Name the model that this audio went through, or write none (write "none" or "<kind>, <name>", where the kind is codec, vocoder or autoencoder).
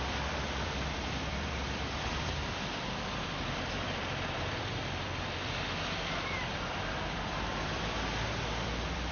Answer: vocoder, BigVGAN v2